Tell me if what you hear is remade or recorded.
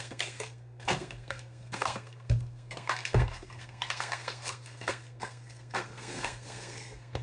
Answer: remade